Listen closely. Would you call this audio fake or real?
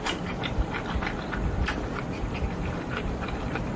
real